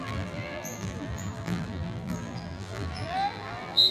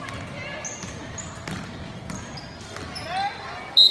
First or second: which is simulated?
first